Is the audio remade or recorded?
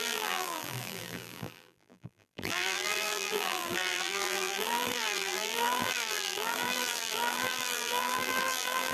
remade